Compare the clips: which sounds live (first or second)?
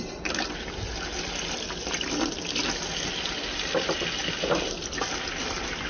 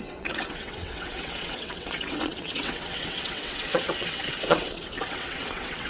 first